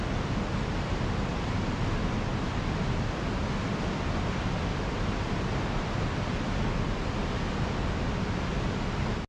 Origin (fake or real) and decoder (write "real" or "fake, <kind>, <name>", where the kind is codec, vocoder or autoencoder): real